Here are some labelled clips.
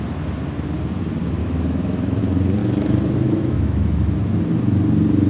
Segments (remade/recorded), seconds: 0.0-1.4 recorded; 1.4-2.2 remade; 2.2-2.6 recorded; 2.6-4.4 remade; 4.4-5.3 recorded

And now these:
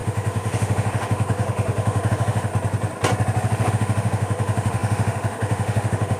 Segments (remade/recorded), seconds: 0.0-2.5 remade; 2.5-3.7 recorded; 3.7-6.2 remade

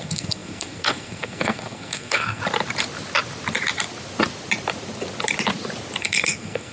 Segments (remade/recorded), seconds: 0.0-2.4 remade; 2.4-6.0 recorded; 6.0-6.7 remade